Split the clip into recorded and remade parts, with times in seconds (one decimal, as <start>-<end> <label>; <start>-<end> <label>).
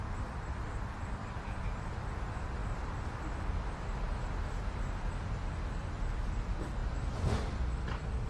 0.0-1.2 recorded; 1.2-1.9 remade; 1.9-6.8 recorded; 6.8-7.4 remade; 7.4-8.3 recorded